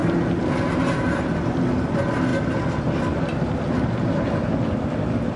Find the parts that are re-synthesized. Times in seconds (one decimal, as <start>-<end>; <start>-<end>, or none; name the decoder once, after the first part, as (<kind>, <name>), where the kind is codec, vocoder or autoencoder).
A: none